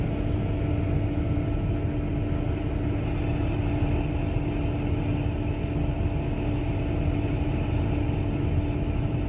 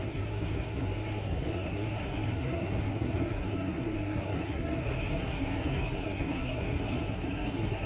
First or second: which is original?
first